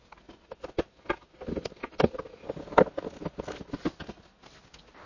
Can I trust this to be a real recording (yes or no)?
yes